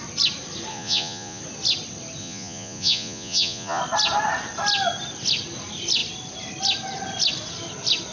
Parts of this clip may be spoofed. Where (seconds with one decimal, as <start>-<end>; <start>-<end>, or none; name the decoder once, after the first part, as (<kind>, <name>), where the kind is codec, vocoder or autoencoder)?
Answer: 0.7-1.4 (vocoder, Vocos); 2.2-3.8